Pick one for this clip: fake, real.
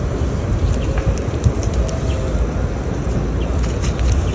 real